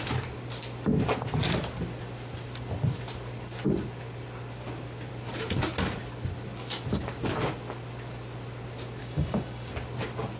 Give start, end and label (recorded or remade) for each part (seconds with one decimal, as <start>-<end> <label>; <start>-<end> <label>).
0.0-9.0 recorded; 9.0-9.7 remade; 9.7-10.4 recorded